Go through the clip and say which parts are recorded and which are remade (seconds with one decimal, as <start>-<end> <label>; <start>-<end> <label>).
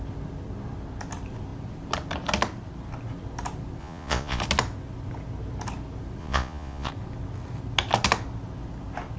0.0-3.8 recorded; 3.8-4.4 remade; 4.4-6.2 recorded; 6.2-6.9 remade; 6.9-9.2 recorded